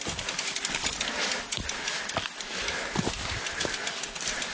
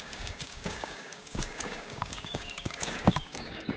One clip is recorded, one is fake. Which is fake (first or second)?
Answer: second